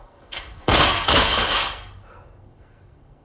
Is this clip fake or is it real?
fake